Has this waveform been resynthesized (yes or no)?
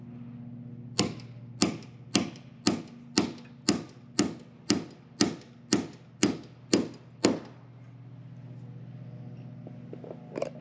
no